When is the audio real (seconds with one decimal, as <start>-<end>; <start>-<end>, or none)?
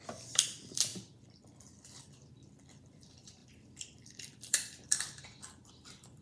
0.9-2.9